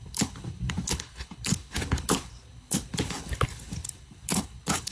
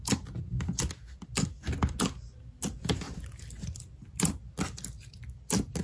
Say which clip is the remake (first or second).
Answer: first